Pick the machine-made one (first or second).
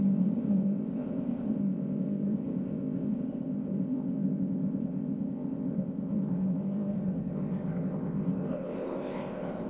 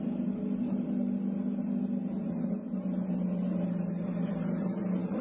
first